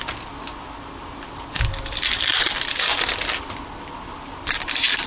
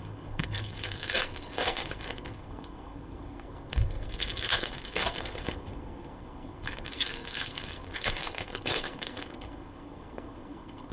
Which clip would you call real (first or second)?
first